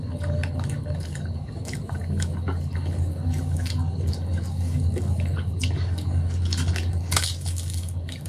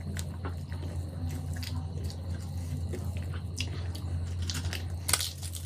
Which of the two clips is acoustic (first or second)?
second